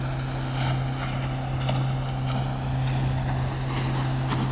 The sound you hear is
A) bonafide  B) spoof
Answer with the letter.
A